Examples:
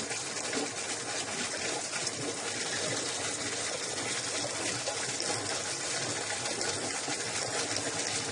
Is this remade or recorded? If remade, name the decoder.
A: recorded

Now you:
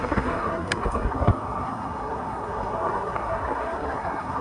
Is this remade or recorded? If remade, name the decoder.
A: remade, codec, SNAC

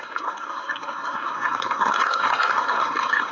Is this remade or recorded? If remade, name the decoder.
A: remade, codec, SNAC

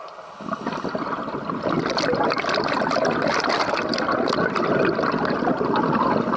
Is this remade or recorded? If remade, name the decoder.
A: recorded